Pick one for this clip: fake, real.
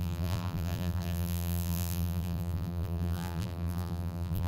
fake